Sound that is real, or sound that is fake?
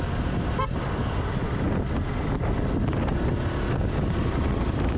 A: real